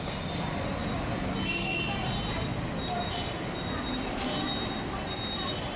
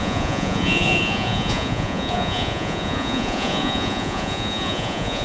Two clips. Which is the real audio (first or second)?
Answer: first